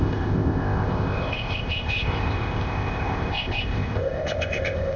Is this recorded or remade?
remade